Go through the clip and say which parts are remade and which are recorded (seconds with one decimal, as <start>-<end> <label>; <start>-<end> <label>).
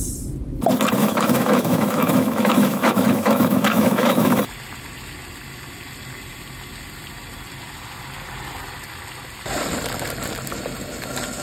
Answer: 0.0-1.0 recorded; 1.0-4.4 remade; 4.4-11.4 recorded